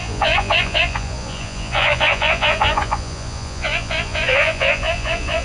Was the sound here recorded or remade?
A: remade